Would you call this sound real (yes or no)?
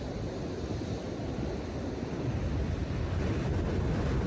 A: yes